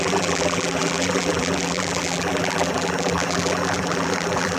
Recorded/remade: remade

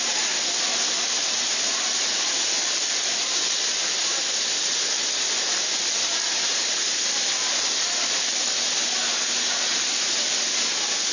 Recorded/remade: recorded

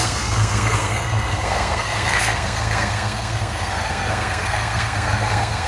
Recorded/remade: remade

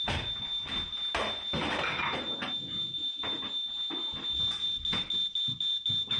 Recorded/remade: recorded